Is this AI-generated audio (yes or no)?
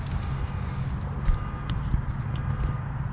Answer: no